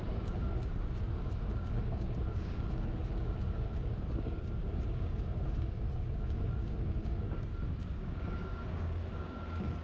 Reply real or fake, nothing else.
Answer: fake